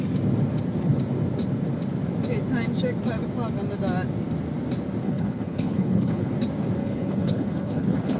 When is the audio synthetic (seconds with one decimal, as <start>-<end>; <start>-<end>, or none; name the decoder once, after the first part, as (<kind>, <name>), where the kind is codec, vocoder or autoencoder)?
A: 5.0-6.3 (codec, HILCodec); 6.8-8.2